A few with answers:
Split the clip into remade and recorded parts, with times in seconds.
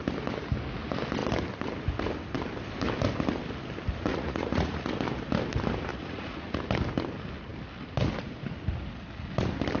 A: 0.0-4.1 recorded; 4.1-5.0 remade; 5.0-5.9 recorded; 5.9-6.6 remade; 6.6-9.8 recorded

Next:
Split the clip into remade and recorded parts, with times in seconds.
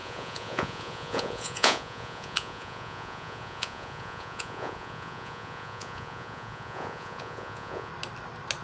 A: 0.0-7.9 remade; 7.9-8.6 recorded